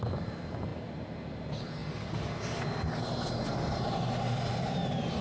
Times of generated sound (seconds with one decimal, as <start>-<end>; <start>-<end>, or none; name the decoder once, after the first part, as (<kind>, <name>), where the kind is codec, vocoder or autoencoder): none